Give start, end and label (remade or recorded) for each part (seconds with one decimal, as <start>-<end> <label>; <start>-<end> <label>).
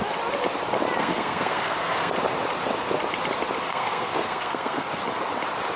0.0-1.0 recorded; 1.0-2.1 remade; 2.1-3.7 recorded; 3.7-5.0 remade; 5.0-5.8 recorded